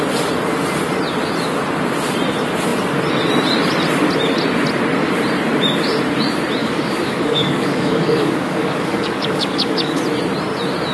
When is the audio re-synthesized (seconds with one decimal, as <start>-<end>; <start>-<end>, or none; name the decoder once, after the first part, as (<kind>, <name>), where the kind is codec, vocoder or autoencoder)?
6.6-10.0 (codec, DAC)